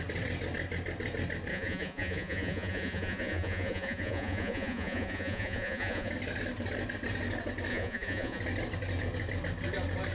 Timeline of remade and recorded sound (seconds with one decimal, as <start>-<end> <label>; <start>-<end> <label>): 0.0-1.5 recorded; 1.5-6.1 remade; 6.1-7.7 recorded; 7.7-8.4 remade; 8.4-10.1 recorded